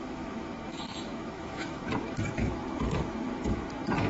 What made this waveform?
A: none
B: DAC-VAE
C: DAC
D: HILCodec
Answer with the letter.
B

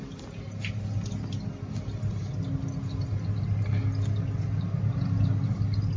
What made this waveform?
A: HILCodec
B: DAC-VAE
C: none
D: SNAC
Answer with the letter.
C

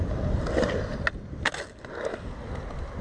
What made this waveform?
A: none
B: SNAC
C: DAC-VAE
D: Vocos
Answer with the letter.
A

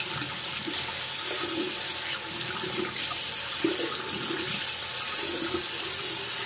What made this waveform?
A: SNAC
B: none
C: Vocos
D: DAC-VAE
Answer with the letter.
B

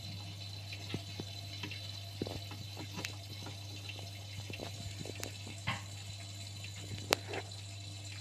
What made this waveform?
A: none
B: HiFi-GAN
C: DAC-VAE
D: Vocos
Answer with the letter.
A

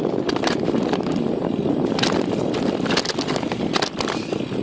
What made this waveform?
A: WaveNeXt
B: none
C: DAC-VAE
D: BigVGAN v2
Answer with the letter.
B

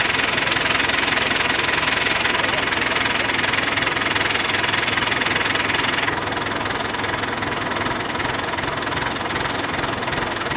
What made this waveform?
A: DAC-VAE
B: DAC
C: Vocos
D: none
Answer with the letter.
D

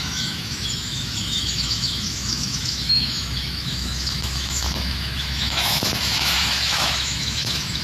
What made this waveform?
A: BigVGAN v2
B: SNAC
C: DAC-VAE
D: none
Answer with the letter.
C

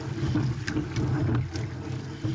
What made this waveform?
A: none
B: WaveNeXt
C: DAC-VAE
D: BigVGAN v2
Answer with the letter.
A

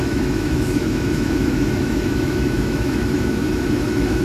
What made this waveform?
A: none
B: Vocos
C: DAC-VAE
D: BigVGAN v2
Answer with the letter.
C